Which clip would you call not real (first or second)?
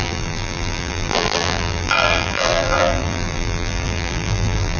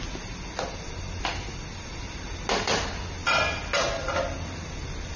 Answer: first